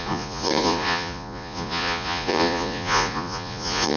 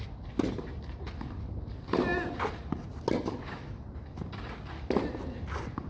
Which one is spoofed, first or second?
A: first